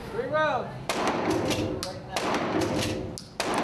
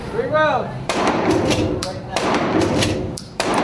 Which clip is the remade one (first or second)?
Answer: second